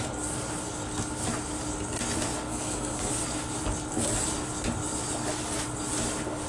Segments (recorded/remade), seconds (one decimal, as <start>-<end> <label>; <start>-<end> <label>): 0.0-2.5 recorded; 2.5-3.1 remade; 3.1-6.5 recorded